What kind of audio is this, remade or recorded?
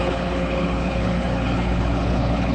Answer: remade